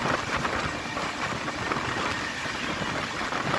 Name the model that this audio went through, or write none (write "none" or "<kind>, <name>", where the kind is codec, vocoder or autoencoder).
none